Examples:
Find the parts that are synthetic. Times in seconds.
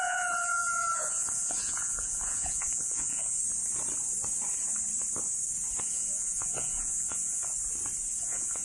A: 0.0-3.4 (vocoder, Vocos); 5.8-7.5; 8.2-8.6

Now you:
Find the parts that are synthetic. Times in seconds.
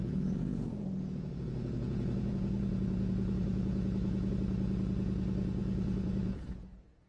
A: 0.0-4.3 (vocoder, Vocos); 5.6-7.1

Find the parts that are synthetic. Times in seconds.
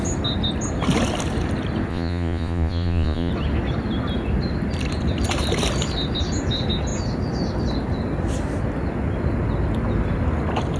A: 1.9-3.3 (vocoder, Vocos)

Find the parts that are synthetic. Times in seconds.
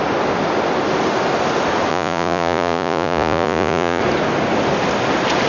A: 1.9-4.0 (vocoder, Vocos)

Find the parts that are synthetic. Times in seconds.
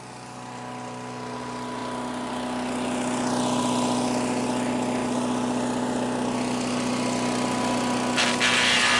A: none